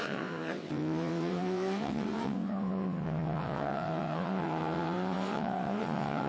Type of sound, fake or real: fake